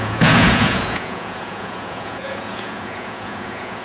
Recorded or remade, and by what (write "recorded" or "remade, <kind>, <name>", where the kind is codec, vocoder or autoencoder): remade, vocoder, Vocos